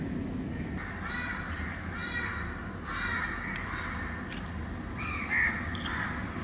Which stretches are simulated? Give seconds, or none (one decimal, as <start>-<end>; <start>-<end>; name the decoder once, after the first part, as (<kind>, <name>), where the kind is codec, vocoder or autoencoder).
none